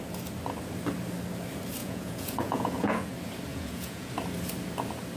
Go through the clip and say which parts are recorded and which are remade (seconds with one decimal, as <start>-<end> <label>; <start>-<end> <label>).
0.0-1.8 recorded; 1.8-3.1 remade; 3.1-3.5 recorded; 3.5-4.1 remade; 4.1-5.2 recorded